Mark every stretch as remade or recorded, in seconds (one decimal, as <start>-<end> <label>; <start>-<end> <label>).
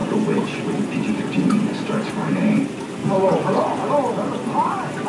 0.0-2.1 remade; 2.1-3.0 recorded; 3.0-3.8 remade; 3.8-5.1 recorded